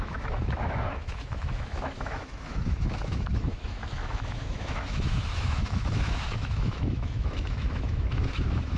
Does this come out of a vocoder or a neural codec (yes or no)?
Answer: yes